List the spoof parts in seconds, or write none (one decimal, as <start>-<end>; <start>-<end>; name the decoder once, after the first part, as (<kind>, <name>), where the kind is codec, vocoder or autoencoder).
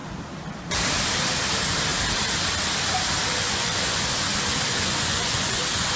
3.4-4.1 (vocoder, Vocos); 4.7-5.6